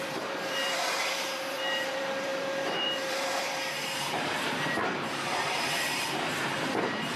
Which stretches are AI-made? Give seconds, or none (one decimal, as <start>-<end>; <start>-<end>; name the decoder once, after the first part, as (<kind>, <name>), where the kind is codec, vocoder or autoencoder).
0.0-7.2 (vocoder, BigVGAN v2)